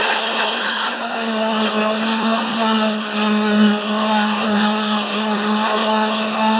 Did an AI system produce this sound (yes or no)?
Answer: yes